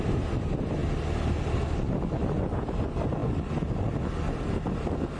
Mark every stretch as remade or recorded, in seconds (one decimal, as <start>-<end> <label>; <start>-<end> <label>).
0.0-5.2 recorded